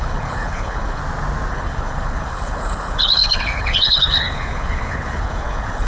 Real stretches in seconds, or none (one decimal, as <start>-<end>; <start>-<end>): 1.0-1.5